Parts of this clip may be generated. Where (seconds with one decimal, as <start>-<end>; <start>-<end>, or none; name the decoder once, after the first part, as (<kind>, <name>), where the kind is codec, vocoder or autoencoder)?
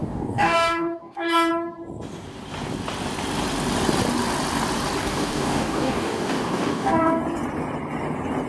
0.0-1.5 (codec, DAC); 5.0-7.2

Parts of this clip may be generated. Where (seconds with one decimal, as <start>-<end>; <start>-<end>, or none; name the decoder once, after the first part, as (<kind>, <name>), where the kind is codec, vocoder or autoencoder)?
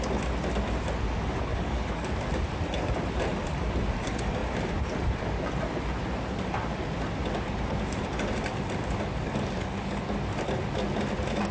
1.5-2.4 (codec, DAC); 9.1-10.0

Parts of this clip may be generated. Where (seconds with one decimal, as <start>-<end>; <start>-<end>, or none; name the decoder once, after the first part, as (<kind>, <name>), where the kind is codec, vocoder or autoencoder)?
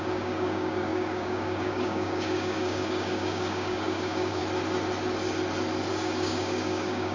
0.0-4.4 (codec, DAC); 5.9-7.1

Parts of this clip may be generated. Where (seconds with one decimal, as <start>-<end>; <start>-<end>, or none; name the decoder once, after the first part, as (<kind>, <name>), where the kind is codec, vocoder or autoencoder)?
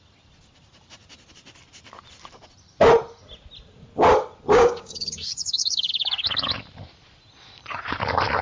4.5-5.9 (codec, DAC)